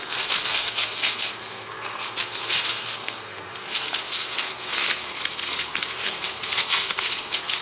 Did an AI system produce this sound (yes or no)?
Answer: yes